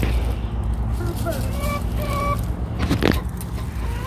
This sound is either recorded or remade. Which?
recorded